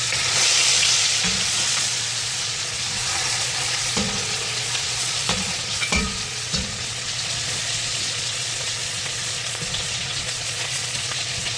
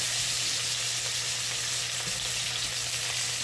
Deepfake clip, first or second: first